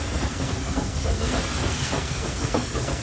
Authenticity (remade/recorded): remade